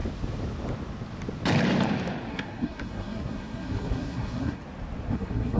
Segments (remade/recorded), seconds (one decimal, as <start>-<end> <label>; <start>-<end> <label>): 0.0-2.3 recorded; 2.3-4.6 remade; 4.6-5.1 recorded; 5.1-5.6 remade